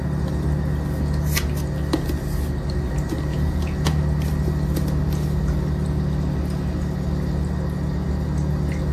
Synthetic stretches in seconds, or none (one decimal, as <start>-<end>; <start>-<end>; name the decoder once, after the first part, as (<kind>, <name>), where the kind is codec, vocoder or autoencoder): 3.3-4.0 (vocoder, Vocos)